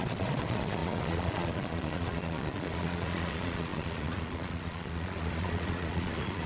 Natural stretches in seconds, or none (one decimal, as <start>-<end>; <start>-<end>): none